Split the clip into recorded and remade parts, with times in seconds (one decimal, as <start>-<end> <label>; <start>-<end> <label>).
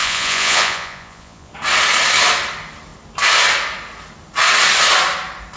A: 0.0-1.5 remade; 1.5-5.6 recorded